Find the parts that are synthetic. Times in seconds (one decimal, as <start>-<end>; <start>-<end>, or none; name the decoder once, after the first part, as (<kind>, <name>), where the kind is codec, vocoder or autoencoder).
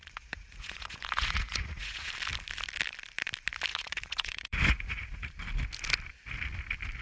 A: 0.0-2.1 (vocoder, Vocos); 3.7-5.3